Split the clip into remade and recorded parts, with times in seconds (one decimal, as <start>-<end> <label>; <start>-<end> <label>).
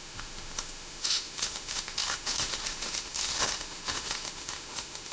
0.0-5.1 remade